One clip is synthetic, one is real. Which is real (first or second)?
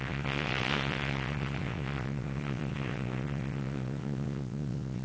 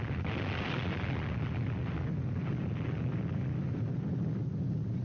second